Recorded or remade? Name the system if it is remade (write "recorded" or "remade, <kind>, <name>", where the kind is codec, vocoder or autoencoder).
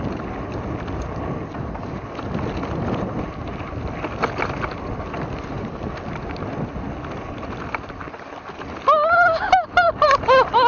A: recorded